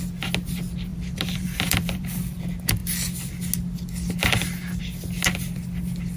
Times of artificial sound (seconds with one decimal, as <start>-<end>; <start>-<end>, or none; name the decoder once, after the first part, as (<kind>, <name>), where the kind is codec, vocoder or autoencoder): 0.9-2.4 (vocoder, BigVGAN v2)